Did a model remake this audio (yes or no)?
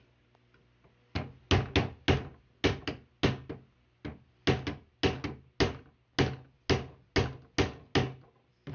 no